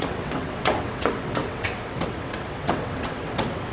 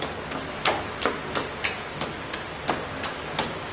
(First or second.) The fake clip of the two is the first